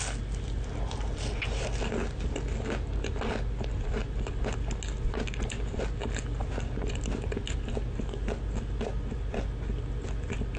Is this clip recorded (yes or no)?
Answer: yes